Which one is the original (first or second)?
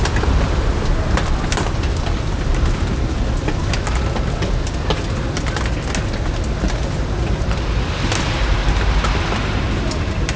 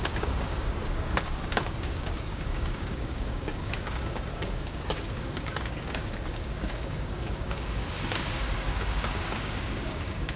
first